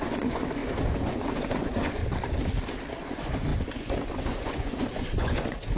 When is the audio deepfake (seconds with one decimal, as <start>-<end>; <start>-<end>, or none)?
0.0-2.0; 3.0-5.8